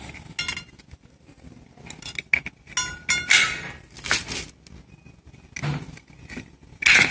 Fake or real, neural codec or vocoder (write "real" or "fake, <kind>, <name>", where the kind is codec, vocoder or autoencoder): real